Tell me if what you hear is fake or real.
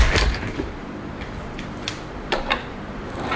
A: fake